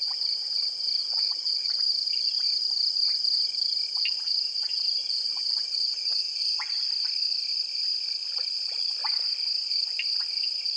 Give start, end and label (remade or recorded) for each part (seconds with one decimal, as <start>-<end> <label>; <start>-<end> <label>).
0.0-1.0 recorded; 1.0-1.7 remade; 1.7-5.0 recorded; 5.0-6.6 remade; 6.6-10.8 recorded